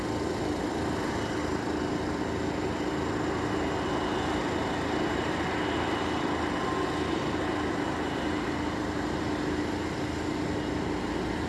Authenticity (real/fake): real